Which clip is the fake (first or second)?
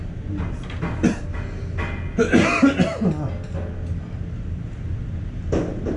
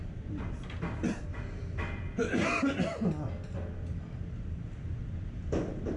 second